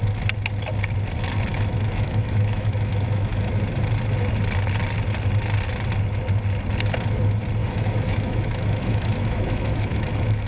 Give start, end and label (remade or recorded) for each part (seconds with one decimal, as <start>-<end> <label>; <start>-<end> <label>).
0.0-1.5 recorded; 1.5-3.5 remade; 3.5-7.6 recorded; 7.6-10.5 remade